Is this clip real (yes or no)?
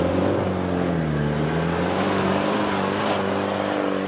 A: yes